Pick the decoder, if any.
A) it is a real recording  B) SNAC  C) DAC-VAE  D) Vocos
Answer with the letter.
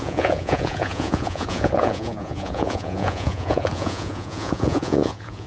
D